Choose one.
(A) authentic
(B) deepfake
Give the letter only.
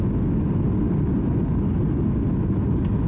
A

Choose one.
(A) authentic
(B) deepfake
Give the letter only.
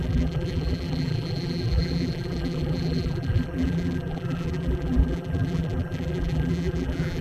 B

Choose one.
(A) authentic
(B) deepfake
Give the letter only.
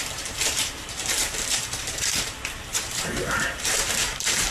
B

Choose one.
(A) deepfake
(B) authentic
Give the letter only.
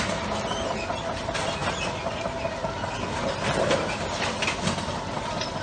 B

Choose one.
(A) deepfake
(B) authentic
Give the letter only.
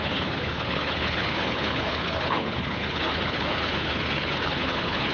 A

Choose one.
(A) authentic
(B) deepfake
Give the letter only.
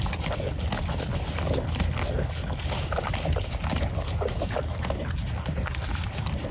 A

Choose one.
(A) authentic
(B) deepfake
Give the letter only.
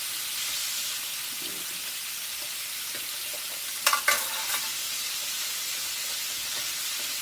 A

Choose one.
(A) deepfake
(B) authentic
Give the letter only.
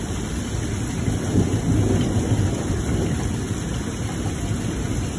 B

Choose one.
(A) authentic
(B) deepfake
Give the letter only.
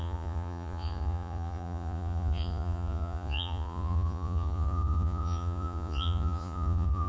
B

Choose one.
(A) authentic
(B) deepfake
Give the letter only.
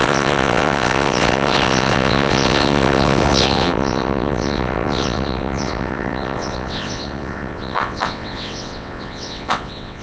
B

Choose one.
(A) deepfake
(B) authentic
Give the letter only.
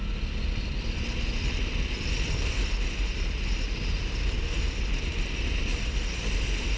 B